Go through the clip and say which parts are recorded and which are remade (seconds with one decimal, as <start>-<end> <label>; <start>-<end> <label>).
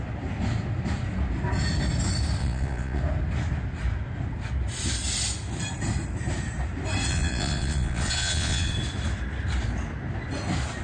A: 0.0-2.4 recorded; 2.4-3.0 remade; 3.0-7.1 recorded; 7.1-8.7 remade; 8.7-10.8 recorded